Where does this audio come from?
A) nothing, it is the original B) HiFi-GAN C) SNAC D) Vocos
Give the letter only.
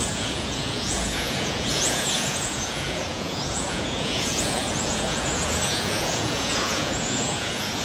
D